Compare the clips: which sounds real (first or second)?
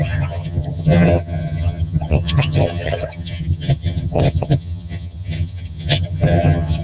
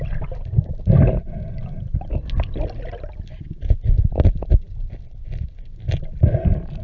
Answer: second